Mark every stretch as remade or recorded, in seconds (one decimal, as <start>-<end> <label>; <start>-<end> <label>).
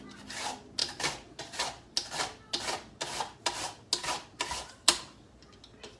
0.0-0.8 recorded; 0.8-1.4 remade; 1.4-6.0 recorded